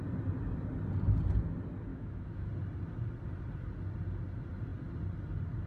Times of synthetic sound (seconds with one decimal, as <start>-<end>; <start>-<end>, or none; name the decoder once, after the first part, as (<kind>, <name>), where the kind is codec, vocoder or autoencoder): 1.9-2.5 (autoencoder, DAC-VAE)